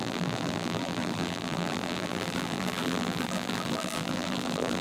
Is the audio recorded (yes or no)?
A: no